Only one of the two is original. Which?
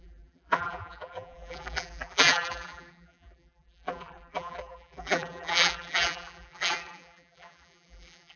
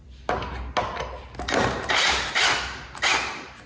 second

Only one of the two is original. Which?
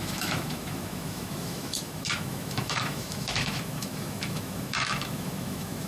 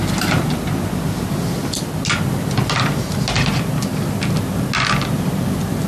second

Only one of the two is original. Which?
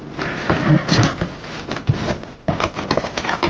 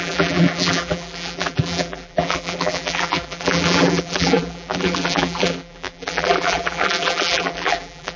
first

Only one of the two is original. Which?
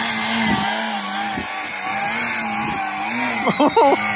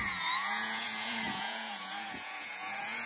first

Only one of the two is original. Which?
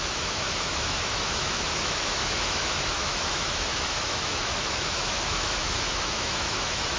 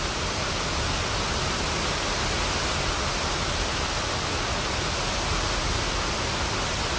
second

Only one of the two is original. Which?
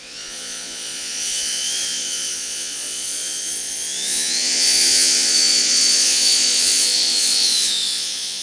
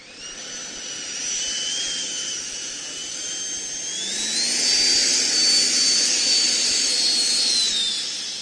second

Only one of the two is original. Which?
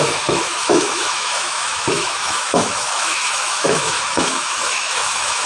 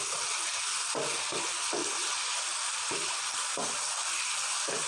second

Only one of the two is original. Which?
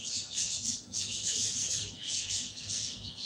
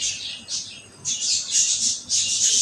second